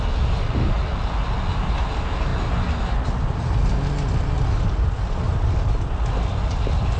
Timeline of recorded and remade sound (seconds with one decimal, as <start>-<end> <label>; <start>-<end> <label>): 0.0-7.0 recorded